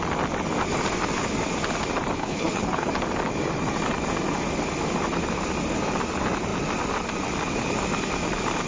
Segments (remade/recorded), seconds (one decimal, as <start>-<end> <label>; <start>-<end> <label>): 0.0-2.2 recorded; 2.2-2.9 remade; 2.9-8.7 recorded